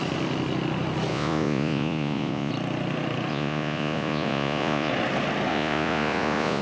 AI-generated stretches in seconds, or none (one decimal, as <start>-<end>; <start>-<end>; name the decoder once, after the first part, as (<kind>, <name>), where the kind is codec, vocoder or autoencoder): 1.1-2.5 (vocoder, Vocos); 3.3-4.9; 5.5-6.6